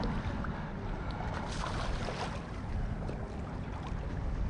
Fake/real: real